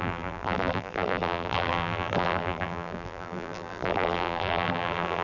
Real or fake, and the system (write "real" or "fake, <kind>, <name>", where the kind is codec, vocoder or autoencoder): fake, vocoder, BigVGAN v2